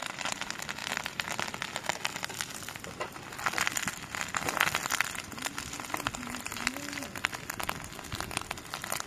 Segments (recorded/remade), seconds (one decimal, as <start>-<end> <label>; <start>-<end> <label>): 0.0-9.1 recorded